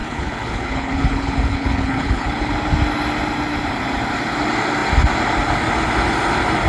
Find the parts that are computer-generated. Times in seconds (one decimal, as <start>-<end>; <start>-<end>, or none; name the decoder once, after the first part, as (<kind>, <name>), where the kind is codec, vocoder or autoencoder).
0.0-2.5 (codec, HILCodec)